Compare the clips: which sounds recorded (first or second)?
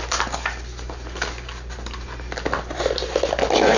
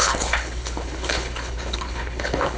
first